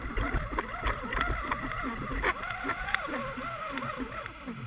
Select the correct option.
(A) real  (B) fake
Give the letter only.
A